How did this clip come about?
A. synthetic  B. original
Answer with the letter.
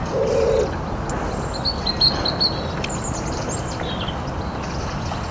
B